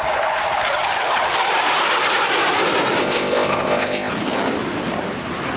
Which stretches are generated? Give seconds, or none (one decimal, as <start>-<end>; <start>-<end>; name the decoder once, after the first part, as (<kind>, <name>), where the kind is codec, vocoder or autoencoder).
3.0-4.1 (codec, ZipCodec)